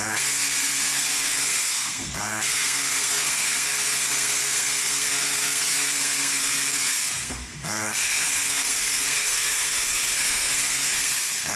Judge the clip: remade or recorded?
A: remade